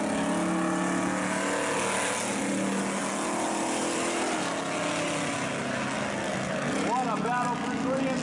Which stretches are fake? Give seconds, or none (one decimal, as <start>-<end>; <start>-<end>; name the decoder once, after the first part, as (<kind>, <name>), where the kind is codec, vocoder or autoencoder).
none